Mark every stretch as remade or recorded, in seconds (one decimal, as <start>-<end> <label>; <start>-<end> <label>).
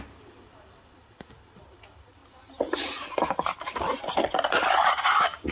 0.0-2.2 remade; 2.2-5.5 recorded